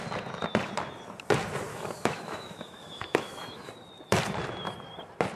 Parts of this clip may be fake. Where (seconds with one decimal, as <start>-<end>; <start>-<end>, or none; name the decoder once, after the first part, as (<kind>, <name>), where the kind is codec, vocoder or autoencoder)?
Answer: 1.7-3.7 (autoencoder, DAC-VAE)